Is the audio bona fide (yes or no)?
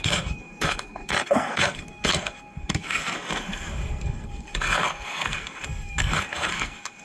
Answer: no